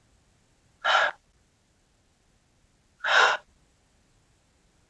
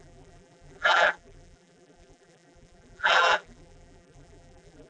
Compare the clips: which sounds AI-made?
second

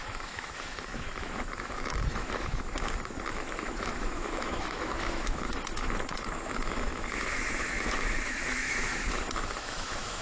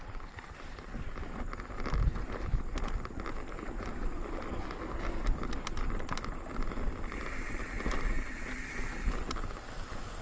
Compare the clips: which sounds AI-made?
first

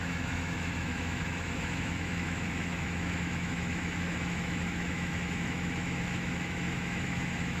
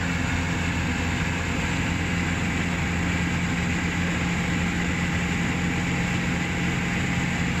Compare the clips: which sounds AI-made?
first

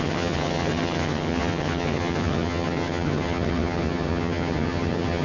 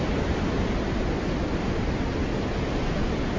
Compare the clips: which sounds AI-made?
first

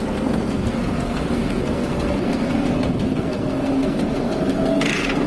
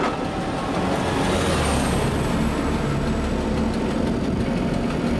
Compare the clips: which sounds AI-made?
first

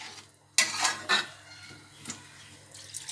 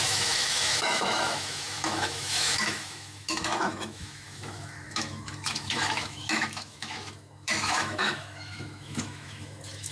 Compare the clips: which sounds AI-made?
second